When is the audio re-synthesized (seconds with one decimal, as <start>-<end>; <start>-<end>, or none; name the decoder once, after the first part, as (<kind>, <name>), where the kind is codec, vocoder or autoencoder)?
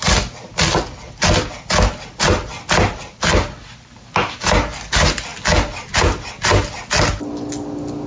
none